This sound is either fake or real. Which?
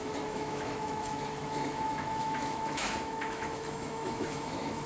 fake